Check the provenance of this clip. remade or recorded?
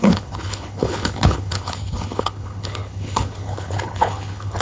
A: remade